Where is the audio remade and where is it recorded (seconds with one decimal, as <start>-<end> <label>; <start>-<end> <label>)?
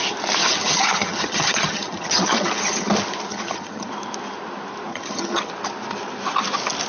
0.0-0.4 recorded; 0.4-2.9 remade; 2.9-3.3 recorded; 3.3-3.9 remade; 3.9-4.9 recorded; 4.9-5.5 remade; 5.5-6.9 recorded